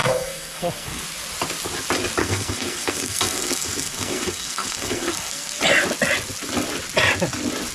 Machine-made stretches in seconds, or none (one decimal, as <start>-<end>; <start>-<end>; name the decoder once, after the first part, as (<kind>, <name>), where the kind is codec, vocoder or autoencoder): 0.0-1.0 (codec, SNAC); 2.2-5.6